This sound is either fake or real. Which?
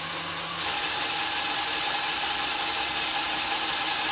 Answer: real